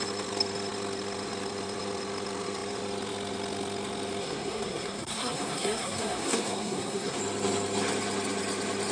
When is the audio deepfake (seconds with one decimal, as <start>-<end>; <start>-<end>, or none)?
4.2-7.2